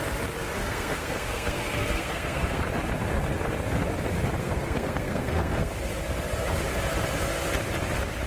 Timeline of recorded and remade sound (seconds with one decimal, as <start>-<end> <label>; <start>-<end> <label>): 0.0-0.6 recorded; 0.6-2.6 remade; 2.6-4.4 recorded; 4.4-5.7 remade; 5.7-8.3 recorded